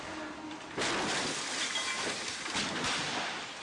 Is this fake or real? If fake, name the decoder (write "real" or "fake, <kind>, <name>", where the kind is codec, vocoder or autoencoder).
real